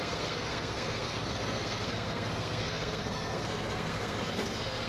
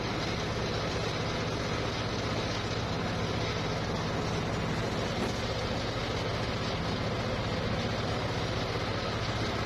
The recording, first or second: second